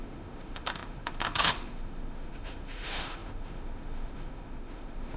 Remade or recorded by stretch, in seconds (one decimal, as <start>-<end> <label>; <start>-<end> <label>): 0.0-5.2 remade

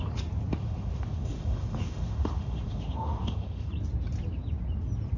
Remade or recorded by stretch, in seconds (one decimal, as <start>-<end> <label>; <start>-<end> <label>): 0.0-0.6 recorded; 0.6-3.7 remade; 3.7-5.2 recorded